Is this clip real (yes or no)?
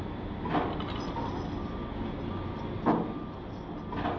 yes